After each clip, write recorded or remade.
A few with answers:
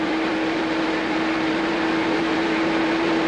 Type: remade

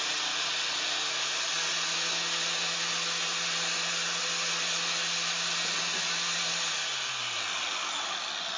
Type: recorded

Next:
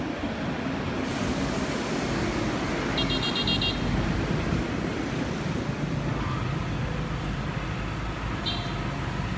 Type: recorded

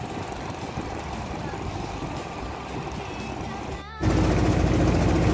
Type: recorded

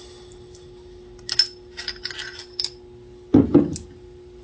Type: recorded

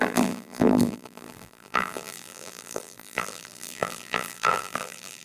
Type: remade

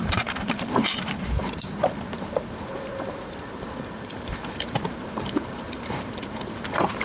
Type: remade